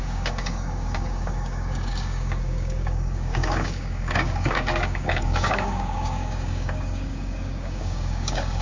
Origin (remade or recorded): remade